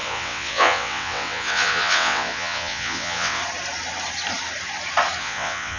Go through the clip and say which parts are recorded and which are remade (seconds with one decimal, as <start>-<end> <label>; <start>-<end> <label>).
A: 0.0-3.4 remade; 3.4-5.2 recorded; 5.2-5.8 remade